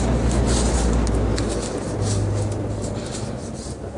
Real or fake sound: real